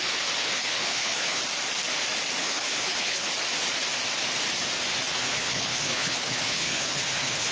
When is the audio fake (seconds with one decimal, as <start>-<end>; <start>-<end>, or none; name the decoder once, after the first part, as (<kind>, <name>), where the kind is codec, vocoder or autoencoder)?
0.4-1.4 (codec, HILCodec); 2.4-3.3; 5.2-7.5